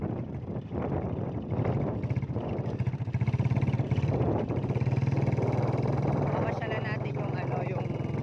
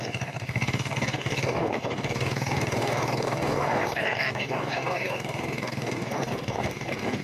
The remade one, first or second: second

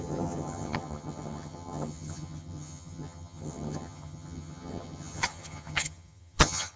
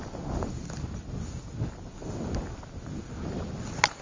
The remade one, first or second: first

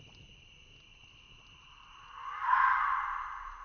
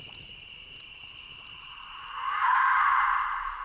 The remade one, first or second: second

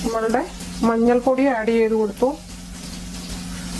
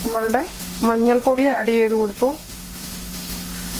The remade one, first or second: second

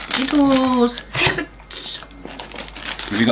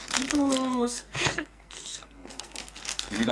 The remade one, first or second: second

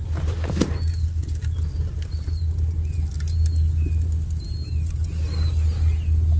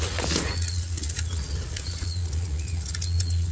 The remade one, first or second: second